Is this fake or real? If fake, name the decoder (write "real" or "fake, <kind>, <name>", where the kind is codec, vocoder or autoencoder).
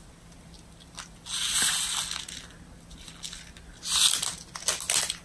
real